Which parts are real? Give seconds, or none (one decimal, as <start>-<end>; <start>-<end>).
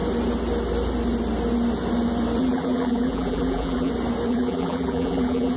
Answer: 0.0-2.4; 3.9-4.3